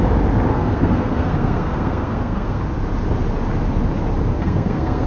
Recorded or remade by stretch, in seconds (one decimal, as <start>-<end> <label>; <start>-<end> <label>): 0.0-0.5 recorded; 0.5-2.6 remade; 2.6-4.3 recorded; 4.3-5.1 remade

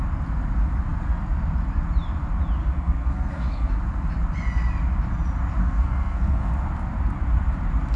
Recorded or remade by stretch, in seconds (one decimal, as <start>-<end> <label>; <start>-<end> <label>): 0.0-2.6 recorded; 2.6-3.7 remade; 3.7-5.6 recorded; 5.6-6.5 remade; 6.5-8.0 recorded